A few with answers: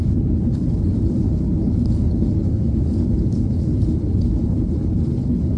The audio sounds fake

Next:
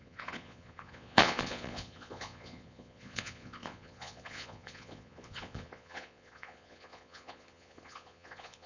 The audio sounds fake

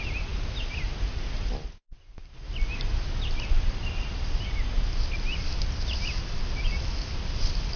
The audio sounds real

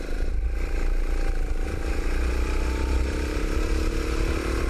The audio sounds fake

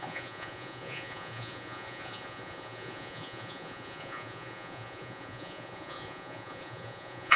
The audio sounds fake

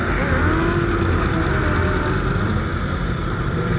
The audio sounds real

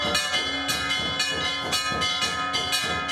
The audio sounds real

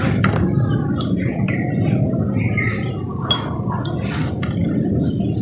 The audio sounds fake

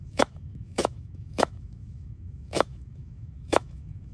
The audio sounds fake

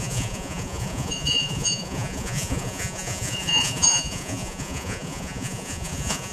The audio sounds fake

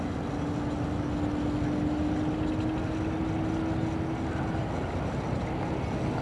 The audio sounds real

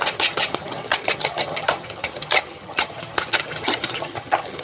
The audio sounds fake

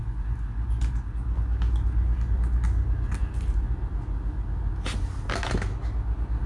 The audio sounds real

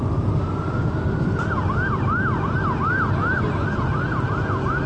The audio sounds real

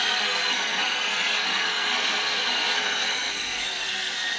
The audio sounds fake